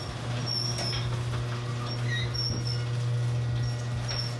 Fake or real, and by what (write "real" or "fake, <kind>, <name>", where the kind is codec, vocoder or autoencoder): real